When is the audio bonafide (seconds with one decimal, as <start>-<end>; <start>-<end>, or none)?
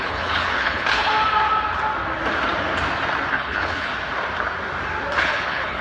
1.1-3.3; 3.9-5.2